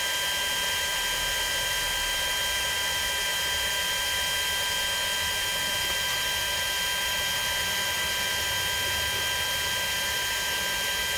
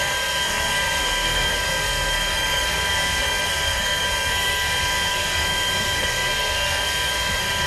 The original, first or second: first